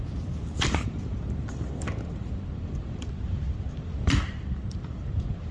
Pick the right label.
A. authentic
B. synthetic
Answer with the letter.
B